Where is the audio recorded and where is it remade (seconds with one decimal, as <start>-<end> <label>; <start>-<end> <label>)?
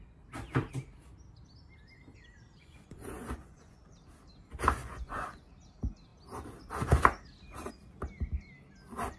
0.0-2.6 recorded; 2.6-3.8 remade; 3.8-4.8 recorded; 4.8-5.5 remade; 5.5-9.2 recorded